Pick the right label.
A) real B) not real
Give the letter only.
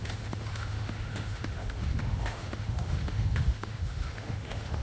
B